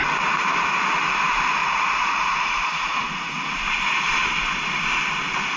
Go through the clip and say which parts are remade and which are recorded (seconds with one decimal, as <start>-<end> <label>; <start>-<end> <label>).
0.0-1.6 recorded; 1.6-3.5 remade; 3.5-5.6 recorded

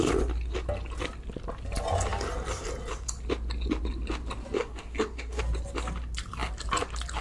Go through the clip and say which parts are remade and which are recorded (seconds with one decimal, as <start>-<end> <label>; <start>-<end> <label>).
0.0-4.6 recorded; 4.6-5.4 remade; 5.4-7.2 recorded

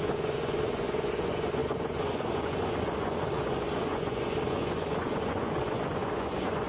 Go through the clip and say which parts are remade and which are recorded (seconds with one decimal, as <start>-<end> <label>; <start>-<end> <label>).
0.0-6.7 remade

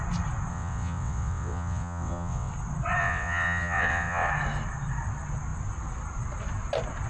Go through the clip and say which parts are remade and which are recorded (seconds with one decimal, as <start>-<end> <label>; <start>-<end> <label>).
0.0-0.5 recorded; 0.5-2.5 remade; 2.5-3.0 recorded; 3.0-4.3 remade; 4.3-7.1 recorded

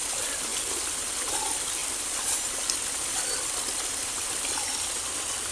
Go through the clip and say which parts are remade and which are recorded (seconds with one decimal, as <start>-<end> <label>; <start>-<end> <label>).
0.0-5.5 recorded

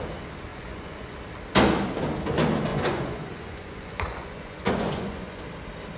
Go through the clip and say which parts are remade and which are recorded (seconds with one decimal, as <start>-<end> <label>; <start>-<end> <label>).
0.0-0.5 recorded; 0.5-1.2 remade; 1.2-2.7 recorded; 2.7-5.4 remade; 5.4-6.0 recorded

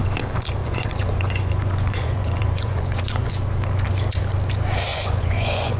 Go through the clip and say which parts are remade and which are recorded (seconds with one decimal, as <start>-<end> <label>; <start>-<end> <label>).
0.0-0.6 recorded; 0.6-3.3 remade; 3.3-4.9 recorded; 4.9-5.8 remade

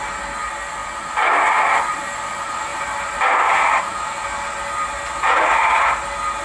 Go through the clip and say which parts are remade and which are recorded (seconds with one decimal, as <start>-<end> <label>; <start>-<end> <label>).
0.0-2.7 recorded; 2.7-3.8 remade; 3.8-6.4 recorded